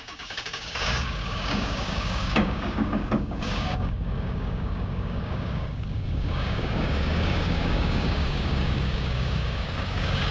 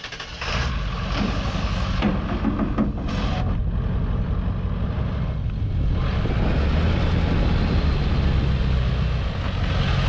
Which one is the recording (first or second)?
second